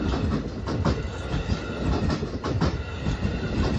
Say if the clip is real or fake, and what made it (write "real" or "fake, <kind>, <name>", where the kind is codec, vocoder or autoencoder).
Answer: real